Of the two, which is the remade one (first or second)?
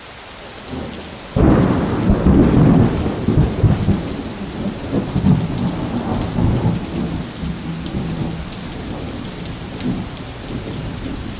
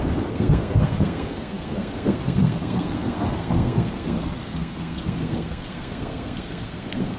second